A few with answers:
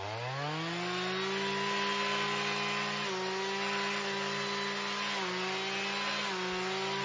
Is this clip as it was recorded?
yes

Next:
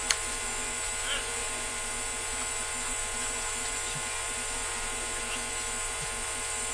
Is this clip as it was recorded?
no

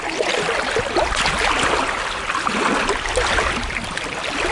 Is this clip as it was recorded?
yes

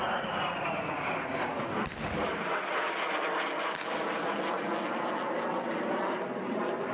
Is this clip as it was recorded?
yes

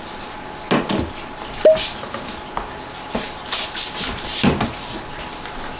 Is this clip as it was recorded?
yes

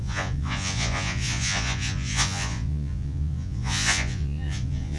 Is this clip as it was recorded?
no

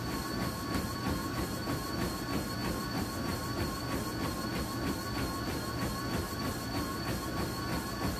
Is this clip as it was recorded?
yes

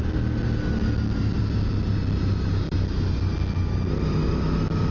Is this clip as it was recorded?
yes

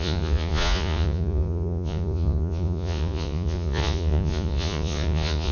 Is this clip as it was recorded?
no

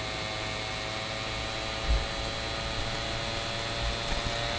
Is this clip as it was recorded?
yes